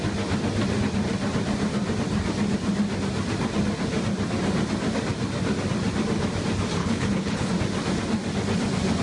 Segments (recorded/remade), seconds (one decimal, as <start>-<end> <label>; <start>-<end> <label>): 0.0-6.8 recorded; 6.8-7.5 remade; 7.5-9.0 recorded